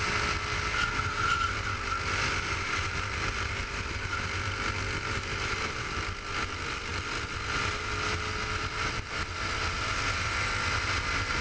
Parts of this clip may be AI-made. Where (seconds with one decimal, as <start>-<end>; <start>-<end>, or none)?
none